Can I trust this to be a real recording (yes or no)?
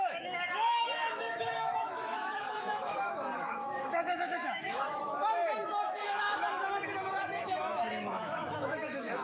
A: no